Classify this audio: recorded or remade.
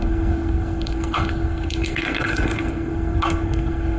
remade